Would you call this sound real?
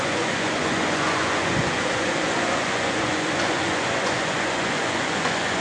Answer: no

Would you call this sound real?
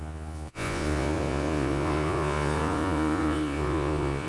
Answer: no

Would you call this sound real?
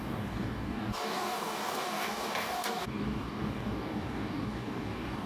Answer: no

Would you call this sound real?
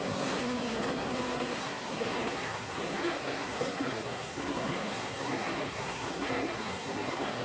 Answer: no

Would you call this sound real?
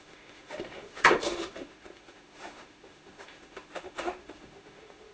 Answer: no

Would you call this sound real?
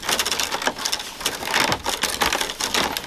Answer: yes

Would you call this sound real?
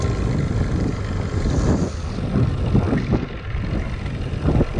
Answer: yes